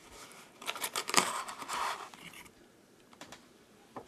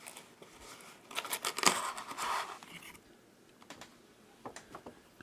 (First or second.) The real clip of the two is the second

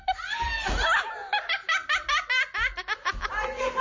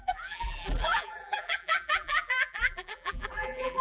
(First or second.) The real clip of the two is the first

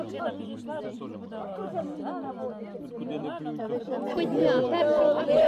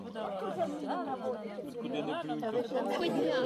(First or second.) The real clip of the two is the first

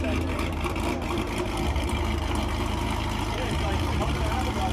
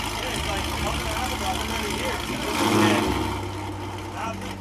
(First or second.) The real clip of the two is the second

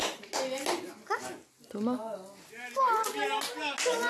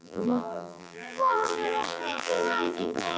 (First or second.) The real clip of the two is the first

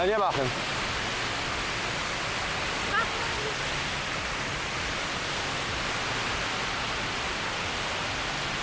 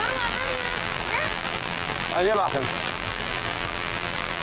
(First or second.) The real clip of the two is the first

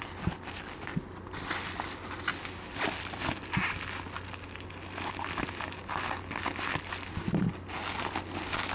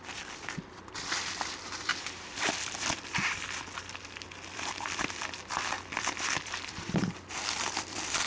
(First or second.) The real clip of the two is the first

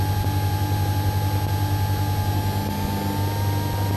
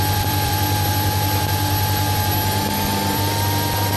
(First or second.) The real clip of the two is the first